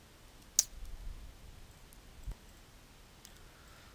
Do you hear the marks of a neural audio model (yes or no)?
no